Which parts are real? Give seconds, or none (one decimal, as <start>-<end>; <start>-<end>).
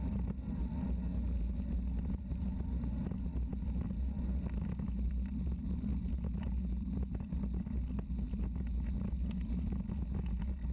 0.0-10.7